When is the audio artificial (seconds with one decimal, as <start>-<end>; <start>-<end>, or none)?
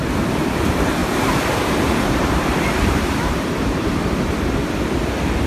1.0-4.0